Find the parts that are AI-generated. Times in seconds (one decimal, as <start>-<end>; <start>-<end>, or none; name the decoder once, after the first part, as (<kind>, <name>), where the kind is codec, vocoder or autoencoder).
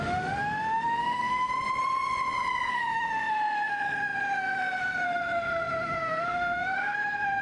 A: 0.0-1.5 (autoencoder, DAC-VAE); 2.7-7.4